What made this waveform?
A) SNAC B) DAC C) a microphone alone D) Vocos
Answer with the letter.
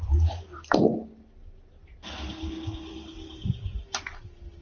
C